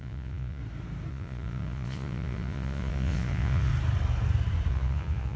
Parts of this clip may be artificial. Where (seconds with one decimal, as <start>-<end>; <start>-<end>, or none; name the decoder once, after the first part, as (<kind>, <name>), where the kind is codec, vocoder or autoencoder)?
0.0-0.6 (vocoder, Vocos); 1.1-3.7; 4.7-5.4